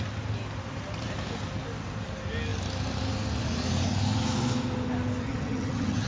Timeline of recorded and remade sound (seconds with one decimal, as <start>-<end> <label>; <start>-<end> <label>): 0.0-5.2 recorded; 5.2-6.1 remade